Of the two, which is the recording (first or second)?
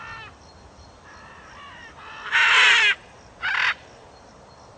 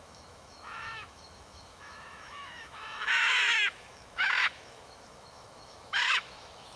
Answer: first